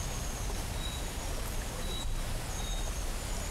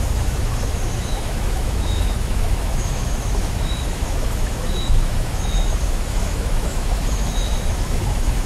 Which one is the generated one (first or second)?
second